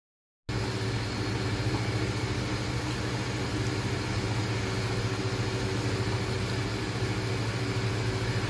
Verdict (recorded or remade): recorded